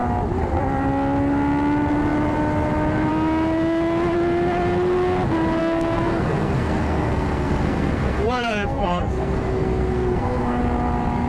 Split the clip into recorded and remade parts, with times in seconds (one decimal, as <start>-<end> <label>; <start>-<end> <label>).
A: 0.0-5.6 recorded; 5.6-10.6 remade; 10.6-11.3 recorded